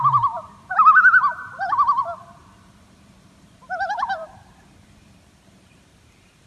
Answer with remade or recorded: remade